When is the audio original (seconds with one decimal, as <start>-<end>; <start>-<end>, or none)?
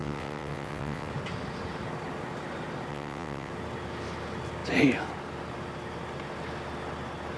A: 1.1-2.9; 3.5-7.4